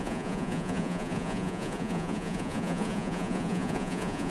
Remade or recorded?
remade